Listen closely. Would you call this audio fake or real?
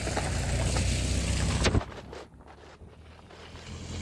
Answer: real